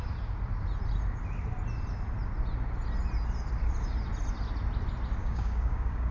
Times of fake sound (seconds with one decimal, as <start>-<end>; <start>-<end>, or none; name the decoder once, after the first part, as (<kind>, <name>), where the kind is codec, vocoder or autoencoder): 5.2-6.1 (codec, DAC)